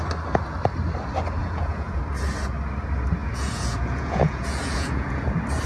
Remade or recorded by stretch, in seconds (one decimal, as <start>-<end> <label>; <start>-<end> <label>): 0.0-1.4 recorded; 1.4-2.0 remade; 2.0-3.2 recorded; 3.2-5.3 remade; 5.3-5.7 recorded